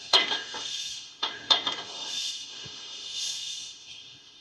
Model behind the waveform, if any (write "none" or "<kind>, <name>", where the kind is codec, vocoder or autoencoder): autoencoder, DAC-VAE